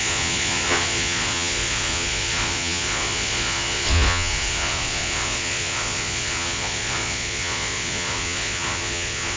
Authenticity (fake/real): fake